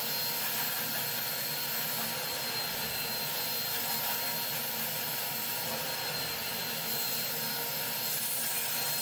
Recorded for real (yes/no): yes